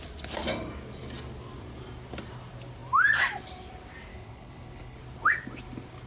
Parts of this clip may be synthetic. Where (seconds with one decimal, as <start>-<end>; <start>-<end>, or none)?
4.1-5.0